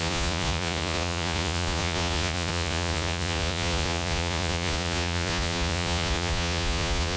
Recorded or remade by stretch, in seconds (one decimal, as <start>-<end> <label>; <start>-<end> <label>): 0.0-7.2 remade